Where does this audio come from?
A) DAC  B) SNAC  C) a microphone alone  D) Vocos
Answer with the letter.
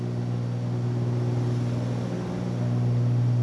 C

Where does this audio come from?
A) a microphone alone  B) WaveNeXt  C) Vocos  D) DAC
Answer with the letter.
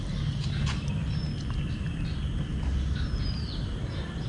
A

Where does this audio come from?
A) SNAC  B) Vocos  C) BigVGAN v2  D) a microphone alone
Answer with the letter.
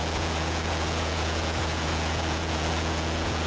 B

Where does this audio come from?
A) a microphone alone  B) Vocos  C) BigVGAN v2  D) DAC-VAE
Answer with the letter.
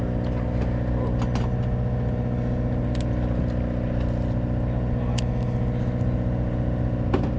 A